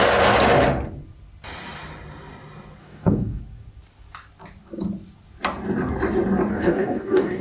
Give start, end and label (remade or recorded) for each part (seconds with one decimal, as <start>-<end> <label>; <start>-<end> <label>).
0.0-2.8 recorded; 2.8-3.4 remade; 3.4-6.5 recorded; 6.5-7.4 remade